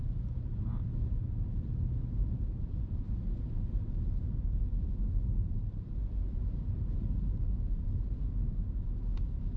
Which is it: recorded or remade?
remade